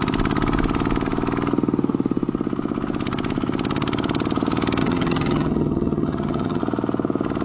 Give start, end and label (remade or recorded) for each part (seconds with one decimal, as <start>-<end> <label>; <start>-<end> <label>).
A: 0.0-4.8 recorded; 4.8-6.6 remade; 6.6-7.4 recorded